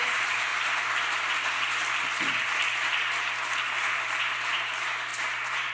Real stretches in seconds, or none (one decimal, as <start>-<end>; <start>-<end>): 0.5-3.9